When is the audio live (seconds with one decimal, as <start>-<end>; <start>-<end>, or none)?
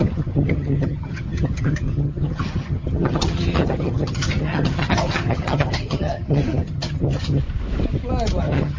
7.4-8.4